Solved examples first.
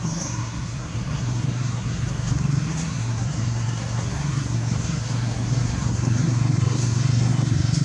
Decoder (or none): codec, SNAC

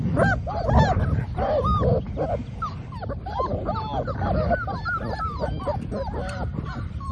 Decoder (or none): none